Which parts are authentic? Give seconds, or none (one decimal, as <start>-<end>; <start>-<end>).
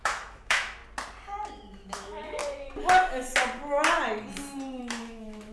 0.8-1.5; 2.4-4.8